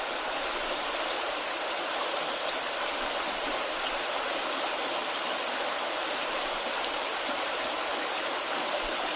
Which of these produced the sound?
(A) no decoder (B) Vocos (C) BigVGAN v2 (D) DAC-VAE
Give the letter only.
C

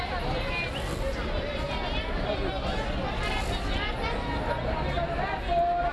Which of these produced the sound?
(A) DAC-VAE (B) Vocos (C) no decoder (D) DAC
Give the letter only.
C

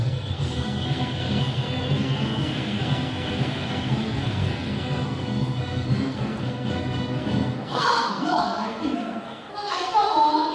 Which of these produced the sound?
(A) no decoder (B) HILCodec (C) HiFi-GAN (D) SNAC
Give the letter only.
D